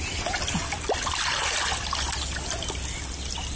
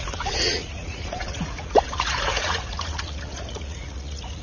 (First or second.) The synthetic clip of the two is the second